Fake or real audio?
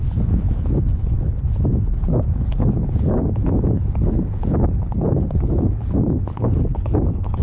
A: fake